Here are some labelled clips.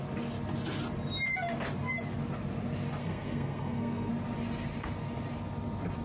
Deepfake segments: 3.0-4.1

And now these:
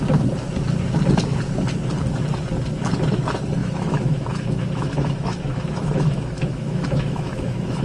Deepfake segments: 3.6-7.8

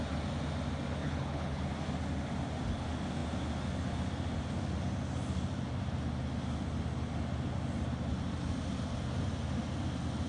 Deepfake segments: 1.0-1.6

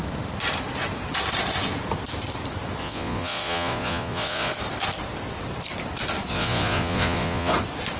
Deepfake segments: 2.8-4.5; 6.3-7.5

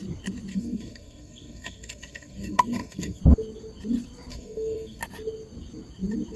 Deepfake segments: 0.5-3.2; 4.3-5.0